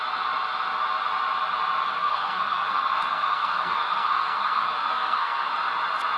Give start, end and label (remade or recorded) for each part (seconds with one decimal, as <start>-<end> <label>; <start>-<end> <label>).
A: 0.0-1.8 recorded; 1.8-5.5 remade; 5.5-6.2 recorded